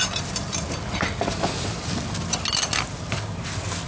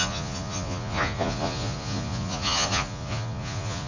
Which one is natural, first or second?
first